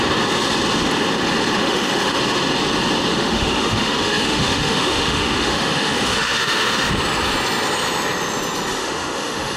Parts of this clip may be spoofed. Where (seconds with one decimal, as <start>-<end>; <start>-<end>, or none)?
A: 1.6-2.2; 3.1-6.9; 8.8-9.6